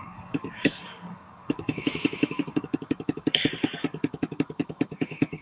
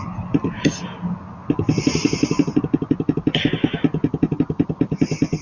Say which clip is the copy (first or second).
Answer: first